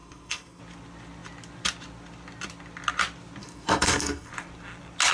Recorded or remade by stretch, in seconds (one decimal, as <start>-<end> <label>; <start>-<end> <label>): 0.0-0.6 remade; 0.6-3.4 recorded; 3.4-4.3 remade; 4.3-5.1 recorded